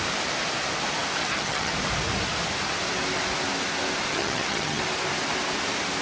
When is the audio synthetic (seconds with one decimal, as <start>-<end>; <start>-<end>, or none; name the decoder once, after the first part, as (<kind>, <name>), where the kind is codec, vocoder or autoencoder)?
1.2-1.7 (vocoder, HiFi-GAN); 4.1-4.8